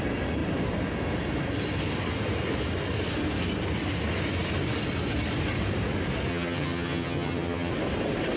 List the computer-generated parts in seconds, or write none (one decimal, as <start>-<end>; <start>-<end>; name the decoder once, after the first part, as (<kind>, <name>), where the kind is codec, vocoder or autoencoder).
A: 6.3-7.7 (vocoder, HiFi-GAN)